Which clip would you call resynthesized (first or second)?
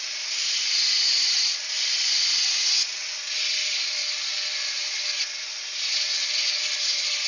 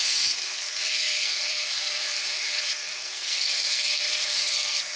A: second